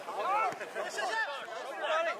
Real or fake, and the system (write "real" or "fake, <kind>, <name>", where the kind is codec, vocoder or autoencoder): real